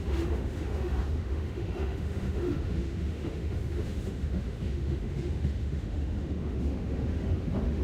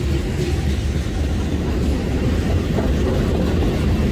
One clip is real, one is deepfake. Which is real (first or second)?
second